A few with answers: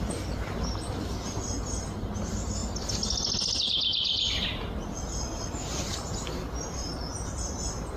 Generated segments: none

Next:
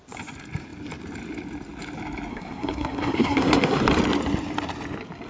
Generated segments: 2.3-3.8 (codec, SNAC)

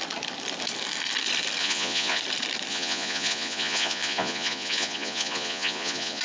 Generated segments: 1.6-2.2 (vocoder, Vocos); 2.7-6.2

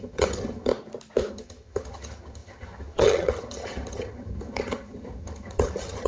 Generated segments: 0.0-0.7 (vocoder, HiFi-GAN); 1.3-6.1

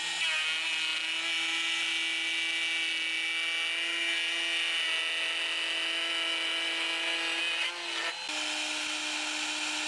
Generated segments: none

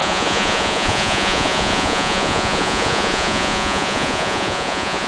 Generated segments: 0.0-5.1 (vocoder, Vocos)

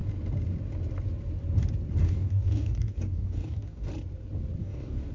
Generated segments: 2.0-3.9 (codec, DAC); 4.6-5.1